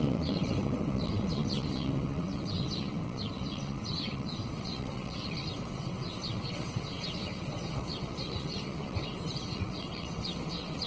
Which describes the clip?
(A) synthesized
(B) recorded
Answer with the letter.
A